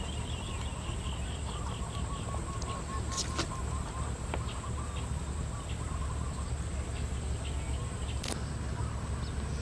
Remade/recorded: recorded